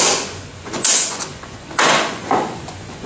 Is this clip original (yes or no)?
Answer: no